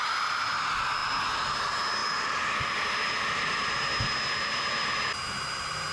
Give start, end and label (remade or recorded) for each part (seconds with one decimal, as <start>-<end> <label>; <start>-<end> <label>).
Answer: 0.0-1.0 recorded; 1.0-1.5 remade; 1.5-2.0 recorded; 2.0-4.1 remade; 4.1-5.9 recorded